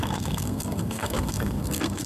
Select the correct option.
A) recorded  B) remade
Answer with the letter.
B